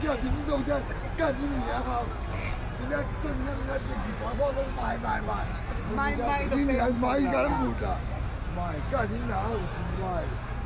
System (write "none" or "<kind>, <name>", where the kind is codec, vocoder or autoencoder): none